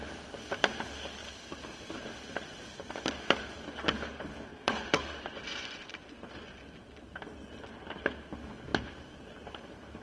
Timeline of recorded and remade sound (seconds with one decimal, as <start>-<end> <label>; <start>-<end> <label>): 0.0-4.6 recorded; 4.6-6.2 remade; 6.2-10.0 recorded